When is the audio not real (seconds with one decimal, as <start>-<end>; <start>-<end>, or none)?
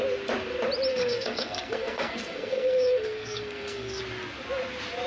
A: 0.9-4.0